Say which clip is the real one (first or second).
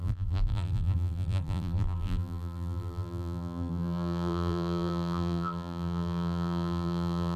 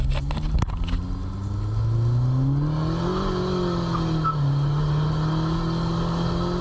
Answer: second